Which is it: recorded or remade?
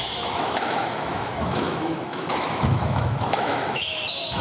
remade